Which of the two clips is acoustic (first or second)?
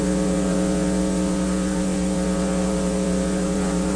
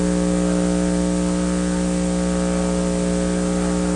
second